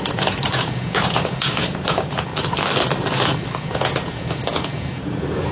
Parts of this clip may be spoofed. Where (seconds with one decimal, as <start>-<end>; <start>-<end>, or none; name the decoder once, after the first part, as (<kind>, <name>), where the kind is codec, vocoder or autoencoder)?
0.0-2.3 (vocoder, Vocos); 3.6-5.5